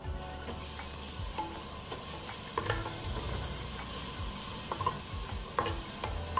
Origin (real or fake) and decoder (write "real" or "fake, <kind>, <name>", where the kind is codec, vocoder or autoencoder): real